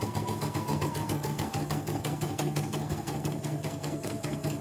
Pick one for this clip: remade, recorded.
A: remade